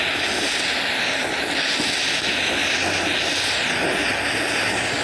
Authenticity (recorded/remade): recorded